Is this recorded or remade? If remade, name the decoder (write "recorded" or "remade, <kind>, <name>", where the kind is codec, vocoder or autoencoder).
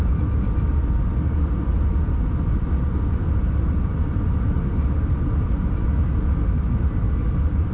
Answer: recorded